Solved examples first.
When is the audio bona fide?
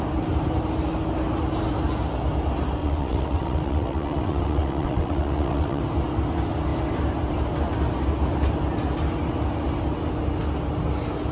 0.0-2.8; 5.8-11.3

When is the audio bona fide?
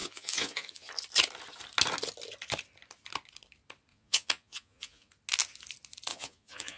0.9-3.9; 5.1-6.1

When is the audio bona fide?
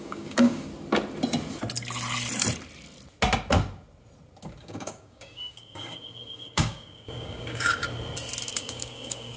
0.7-4.6; 7.8-8.5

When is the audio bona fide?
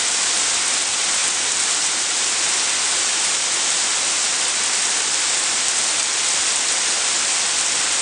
0.0-8.0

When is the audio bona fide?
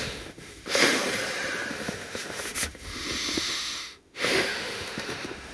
1.0-1.7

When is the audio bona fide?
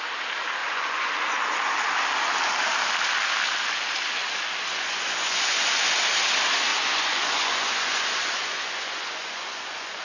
0.0-0.6; 1.1-4.7; 5.6-6.7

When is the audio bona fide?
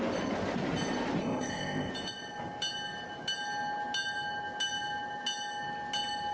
0.0-1.2; 1.9-6.3